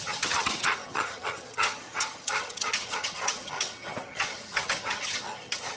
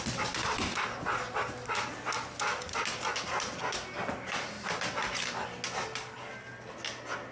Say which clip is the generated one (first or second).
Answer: first